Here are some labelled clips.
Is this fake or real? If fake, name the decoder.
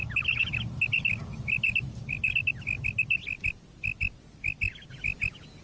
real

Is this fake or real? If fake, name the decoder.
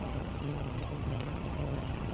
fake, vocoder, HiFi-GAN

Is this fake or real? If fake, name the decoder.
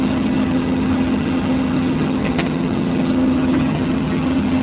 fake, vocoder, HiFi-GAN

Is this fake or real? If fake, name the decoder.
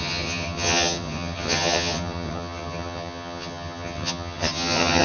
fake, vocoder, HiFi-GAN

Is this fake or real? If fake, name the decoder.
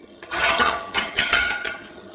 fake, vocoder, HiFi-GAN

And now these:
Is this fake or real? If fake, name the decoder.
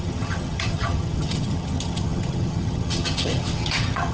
fake, vocoder, HiFi-GAN